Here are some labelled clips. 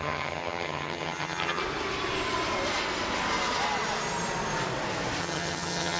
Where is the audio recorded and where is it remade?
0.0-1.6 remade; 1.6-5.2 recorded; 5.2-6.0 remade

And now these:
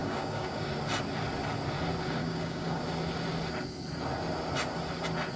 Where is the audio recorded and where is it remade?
0.0-0.7 remade; 0.7-2.2 recorded; 2.2-2.8 remade; 2.8-5.4 recorded

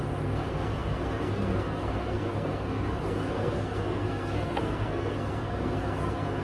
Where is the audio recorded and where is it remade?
0.0-6.4 remade